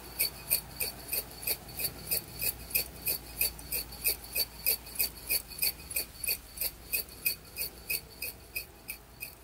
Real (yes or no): yes